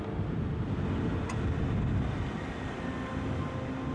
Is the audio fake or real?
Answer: real